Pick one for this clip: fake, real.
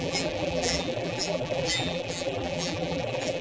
fake